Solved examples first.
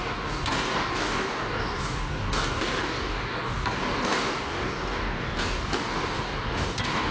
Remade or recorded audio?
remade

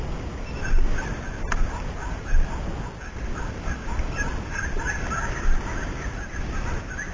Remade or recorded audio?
recorded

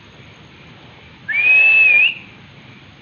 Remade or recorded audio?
recorded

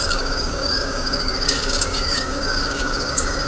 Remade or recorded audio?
remade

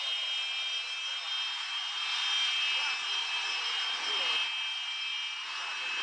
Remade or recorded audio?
recorded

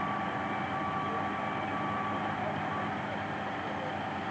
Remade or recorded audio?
recorded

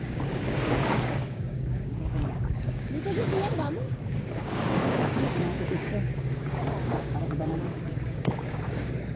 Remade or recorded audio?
remade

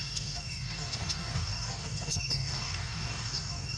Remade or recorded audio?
remade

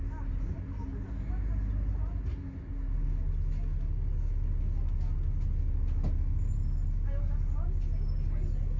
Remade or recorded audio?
recorded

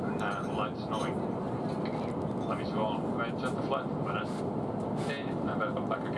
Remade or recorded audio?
recorded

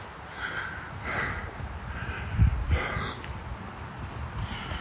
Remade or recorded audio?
recorded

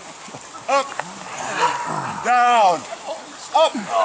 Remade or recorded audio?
recorded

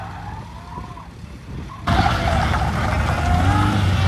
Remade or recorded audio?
recorded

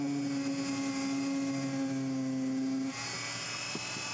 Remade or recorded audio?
recorded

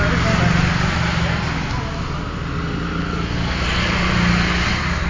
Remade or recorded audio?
recorded